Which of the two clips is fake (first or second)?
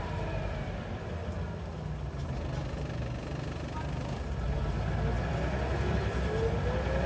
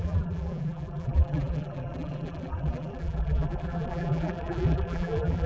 second